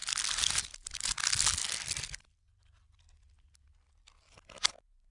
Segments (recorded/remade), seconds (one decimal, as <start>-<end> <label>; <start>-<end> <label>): 0.0-5.1 recorded